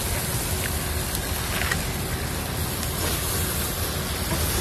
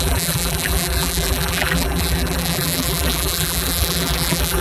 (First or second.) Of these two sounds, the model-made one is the second